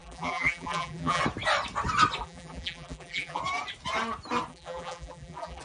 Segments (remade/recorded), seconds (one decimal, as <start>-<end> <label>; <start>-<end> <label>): 0.0-1.2 remade; 1.2-2.2 recorded; 2.2-3.4 remade; 3.4-4.5 recorded; 4.5-5.6 remade